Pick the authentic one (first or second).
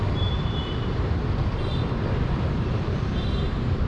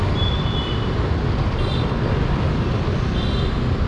second